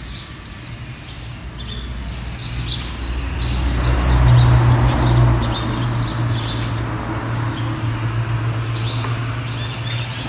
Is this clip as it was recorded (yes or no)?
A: yes